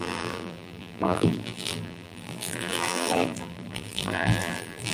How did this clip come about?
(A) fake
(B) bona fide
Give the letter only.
A